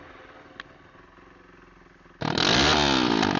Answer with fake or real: real